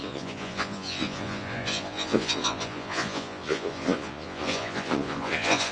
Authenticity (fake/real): fake